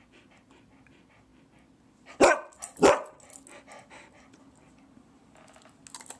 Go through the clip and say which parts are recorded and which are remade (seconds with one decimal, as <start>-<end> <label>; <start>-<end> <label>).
0.0-6.2 recorded